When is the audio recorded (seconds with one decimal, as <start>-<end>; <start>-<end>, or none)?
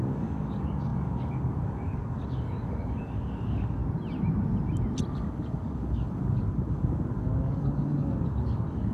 3.8-5.1